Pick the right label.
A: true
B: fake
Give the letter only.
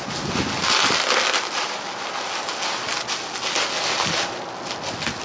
A